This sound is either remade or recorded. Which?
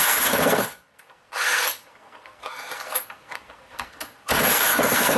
remade